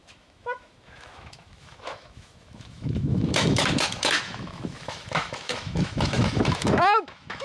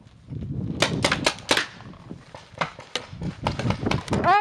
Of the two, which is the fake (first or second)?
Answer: first